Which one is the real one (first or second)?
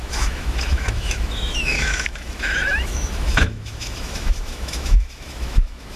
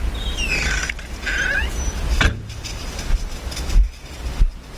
second